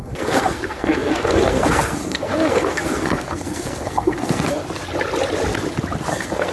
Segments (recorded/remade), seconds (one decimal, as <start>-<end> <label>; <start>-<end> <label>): 0.0-4.6 remade; 4.6-6.1 recorded; 6.1-6.5 remade